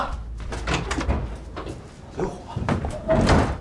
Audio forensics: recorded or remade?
recorded